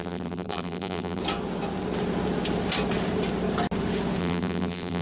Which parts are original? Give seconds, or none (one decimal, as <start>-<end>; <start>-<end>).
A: 1.2-4.2